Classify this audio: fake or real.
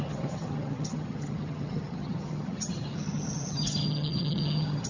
fake